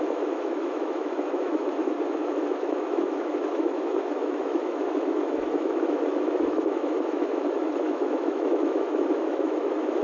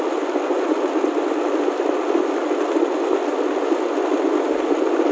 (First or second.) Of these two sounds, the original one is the second